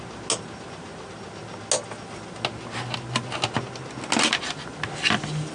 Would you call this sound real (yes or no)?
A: yes